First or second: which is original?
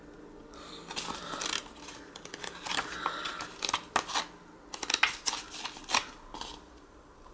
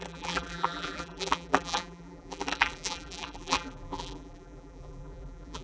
first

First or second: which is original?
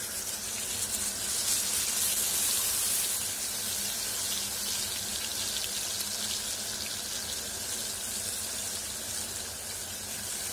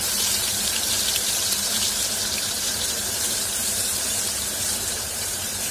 first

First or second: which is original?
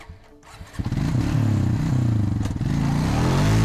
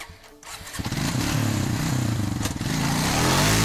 first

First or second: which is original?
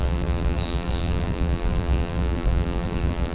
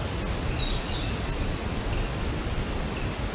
second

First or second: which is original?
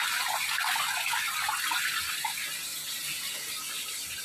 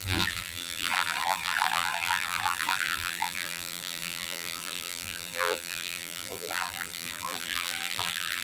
first